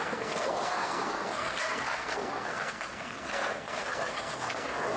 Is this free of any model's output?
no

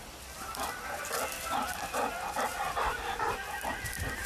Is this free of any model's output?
yes